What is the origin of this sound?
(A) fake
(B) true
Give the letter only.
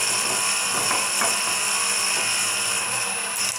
B